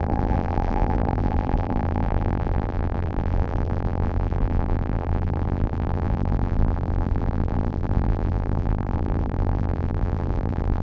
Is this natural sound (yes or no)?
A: no